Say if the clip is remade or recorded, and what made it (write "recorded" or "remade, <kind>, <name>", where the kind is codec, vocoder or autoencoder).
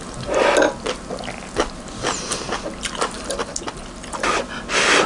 recorded